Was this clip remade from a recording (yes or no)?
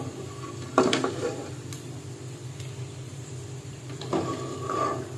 yes